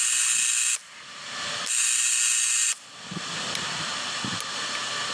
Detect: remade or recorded recorded